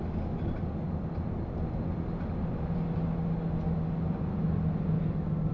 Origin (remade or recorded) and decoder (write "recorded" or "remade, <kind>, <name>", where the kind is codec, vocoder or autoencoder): recorded